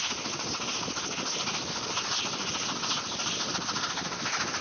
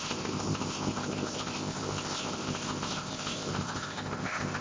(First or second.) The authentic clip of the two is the first